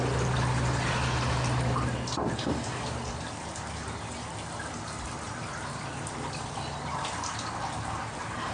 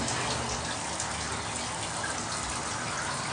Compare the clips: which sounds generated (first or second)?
first